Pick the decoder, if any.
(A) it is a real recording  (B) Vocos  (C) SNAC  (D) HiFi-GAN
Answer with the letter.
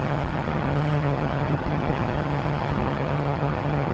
D